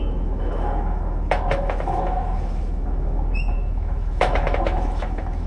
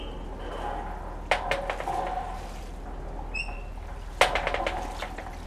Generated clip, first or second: first